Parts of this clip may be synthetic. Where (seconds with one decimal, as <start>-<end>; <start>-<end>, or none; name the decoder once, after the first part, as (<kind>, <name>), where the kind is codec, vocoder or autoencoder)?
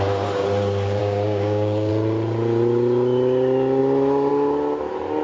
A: 1.0-1.9 (codec, DAC)